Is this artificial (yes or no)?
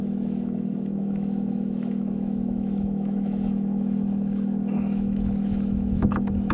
yes